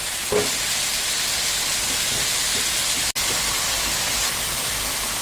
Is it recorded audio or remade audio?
recorded